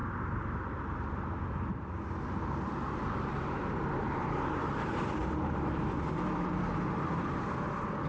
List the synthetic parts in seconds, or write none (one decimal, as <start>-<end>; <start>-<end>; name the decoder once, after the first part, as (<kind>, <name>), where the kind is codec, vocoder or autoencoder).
3.3-8.1 (vocoder, BigVGAN v2)